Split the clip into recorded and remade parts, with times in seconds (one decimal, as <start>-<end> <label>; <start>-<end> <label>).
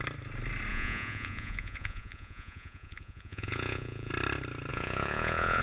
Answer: 0.0-0.7 recorded; 0.7-4.1 remade; 4.1-4.7 recorded; 4.7-5.6 remade